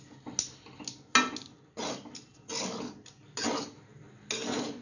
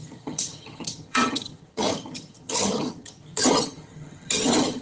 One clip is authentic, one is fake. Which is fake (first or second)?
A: second